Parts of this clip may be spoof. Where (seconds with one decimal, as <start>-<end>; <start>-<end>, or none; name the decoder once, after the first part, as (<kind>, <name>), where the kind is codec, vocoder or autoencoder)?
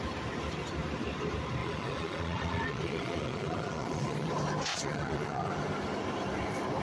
1.6-4.3 (vocoder, Vocos); 4.7-5.5